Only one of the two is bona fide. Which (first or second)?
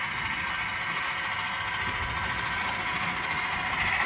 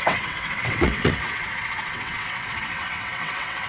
first